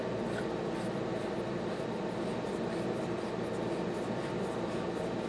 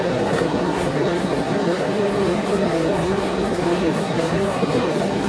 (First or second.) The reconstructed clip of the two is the second